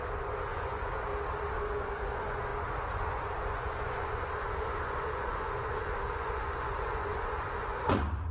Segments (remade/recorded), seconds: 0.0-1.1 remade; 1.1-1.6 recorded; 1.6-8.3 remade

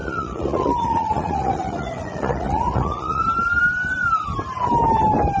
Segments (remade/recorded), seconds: 0.0-3.2 remade; 3.2-5.4 recorded